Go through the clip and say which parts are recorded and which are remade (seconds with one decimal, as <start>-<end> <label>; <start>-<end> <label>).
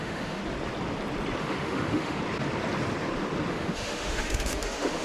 0.0-0.4 remade; 0.4-1.4 recorded; 1.4-2.2 remade; 2.2-3.5 recorded; 3.5-5.0 remade